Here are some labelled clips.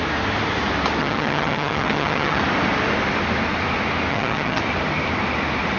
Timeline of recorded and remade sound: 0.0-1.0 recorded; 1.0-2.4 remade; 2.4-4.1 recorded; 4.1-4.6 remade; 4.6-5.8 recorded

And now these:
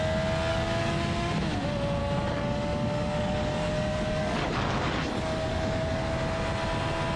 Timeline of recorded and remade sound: 0.0-0.5 recorded; 0.5-1.3 remade; 1.3-2.0 recorded; 2.0-6.1 remade; 6.1-7.2 recorded

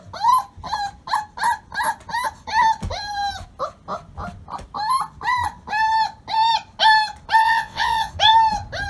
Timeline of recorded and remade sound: 0.0-7.4 recorded; 7.4-8.1 remade; 8.1-8.9 recorded

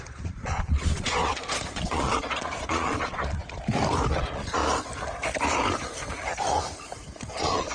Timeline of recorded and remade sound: 0.0-3.4 remade; 3.4-4.1 recorded; 4.1-4.6 remade; 4.6-7.3 recorded; 7.3-7.7 remade

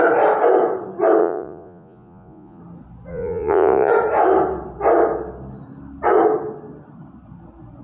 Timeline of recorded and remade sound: 0.0-1.2 recorded; 1.2-2.6 remade; 2.6-3.1 recorded; 3.1-3.9 remade; 3.9-7.8 recorded

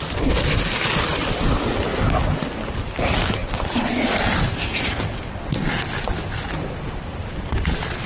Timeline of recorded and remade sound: 0.0-1.9 recorded; 1.9-3.0 remade; 3.0-3.4 recorded; 3.4-5.7 remade; 5.7-8.1 recorded

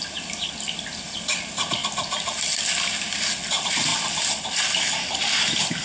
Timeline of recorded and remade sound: 0.0-5.8 recorded

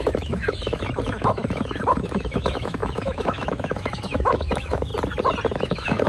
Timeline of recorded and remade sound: 0.0-4.9 remade; 4.9-5.5 recorded; 5.5-6.1 remade